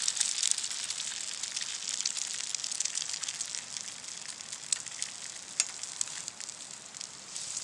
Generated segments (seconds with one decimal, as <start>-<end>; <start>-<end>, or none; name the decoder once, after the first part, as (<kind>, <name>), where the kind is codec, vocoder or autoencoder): 0.0-1.1 (vocoder, BigVGAN v2); 1.9-2.5; 6.2-7.6